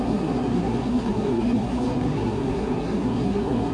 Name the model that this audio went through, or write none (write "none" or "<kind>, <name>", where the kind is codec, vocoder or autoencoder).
codec, SNAC